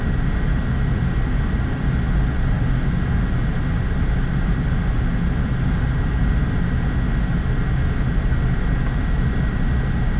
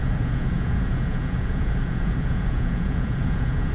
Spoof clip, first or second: second